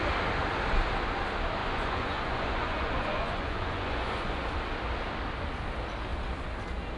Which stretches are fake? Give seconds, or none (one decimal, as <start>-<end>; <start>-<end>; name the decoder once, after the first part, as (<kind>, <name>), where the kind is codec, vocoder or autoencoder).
1.6-4.4 (vocoder, Vocos)

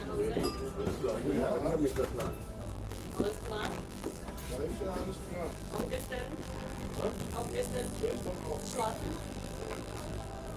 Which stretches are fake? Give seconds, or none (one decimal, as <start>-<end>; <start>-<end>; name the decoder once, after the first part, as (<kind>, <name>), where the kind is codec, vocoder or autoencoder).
2.6-4.2 (vocoder, BigVGAN v2); 5.5-10.6